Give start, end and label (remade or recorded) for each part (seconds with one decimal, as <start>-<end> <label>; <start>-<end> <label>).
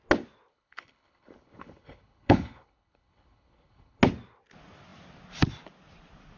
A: 0.0-0.5 recorded; 0.5-4.0 remade; 4.0-6.4 recorded